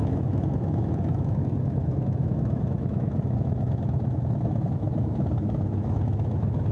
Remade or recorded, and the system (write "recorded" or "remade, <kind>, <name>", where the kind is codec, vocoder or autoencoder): remade, autoencoder, DAC-VAE